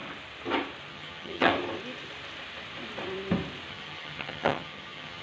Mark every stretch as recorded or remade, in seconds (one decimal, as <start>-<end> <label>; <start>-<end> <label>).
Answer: 0.0-0.9 recorded; 0.9-1.5 remade; 1.5-3.7 recorded; 3.7-5.2 remade